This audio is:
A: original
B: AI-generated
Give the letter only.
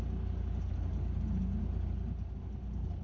A